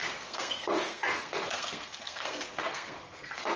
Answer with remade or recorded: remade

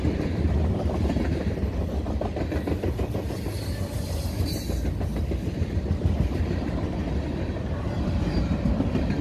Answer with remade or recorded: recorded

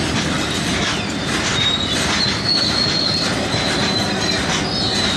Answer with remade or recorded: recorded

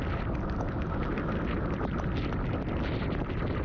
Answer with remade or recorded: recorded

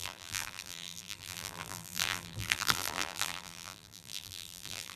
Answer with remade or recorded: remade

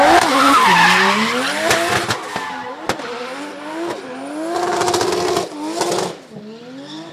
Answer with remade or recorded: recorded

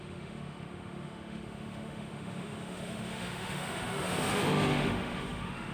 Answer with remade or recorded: remade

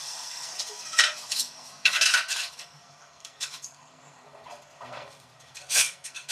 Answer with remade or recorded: remade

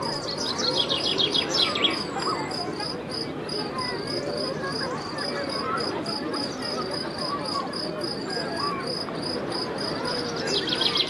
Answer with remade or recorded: recorded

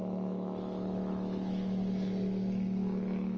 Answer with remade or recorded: remade